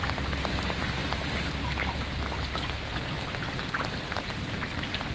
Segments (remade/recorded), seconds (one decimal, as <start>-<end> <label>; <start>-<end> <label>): 0.0-5.1 recorded